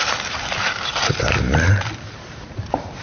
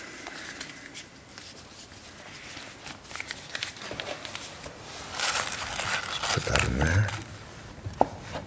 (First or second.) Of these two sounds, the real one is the second